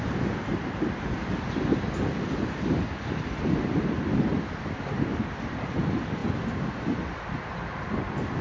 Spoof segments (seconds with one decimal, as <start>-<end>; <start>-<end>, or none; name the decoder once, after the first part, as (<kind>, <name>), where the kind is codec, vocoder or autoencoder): none